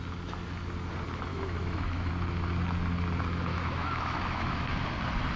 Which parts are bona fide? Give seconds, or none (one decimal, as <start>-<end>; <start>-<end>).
0.0-1.3; 2.1-3.5; 4.9-5.4

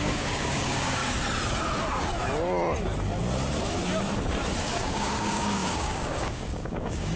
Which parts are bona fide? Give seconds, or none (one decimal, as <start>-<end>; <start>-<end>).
1.0-4.6

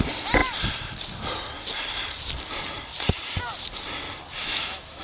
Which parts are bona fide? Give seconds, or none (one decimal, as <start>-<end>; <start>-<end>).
0.0-4.4

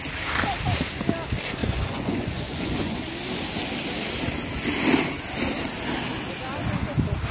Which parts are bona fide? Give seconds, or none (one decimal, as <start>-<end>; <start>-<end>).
0.0-1.6; 3.0-7.3

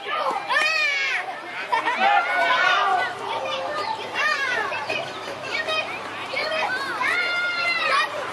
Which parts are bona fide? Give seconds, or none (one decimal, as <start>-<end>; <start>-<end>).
1.7-2.4; 2.9-3.7; 6.4-7.8

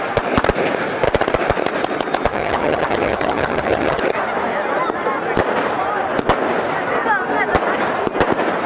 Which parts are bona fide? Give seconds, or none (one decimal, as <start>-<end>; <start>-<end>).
0.0-2.3; 4.0-8.7

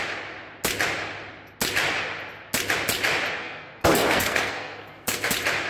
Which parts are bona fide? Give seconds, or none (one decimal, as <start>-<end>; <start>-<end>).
0.0-3.4; 5.3-5.7